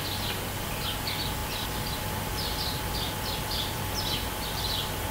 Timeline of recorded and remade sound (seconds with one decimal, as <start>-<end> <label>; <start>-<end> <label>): 0.0-1.4 recorded; 1.4-3.8 remade; 3.8-5.1 recorded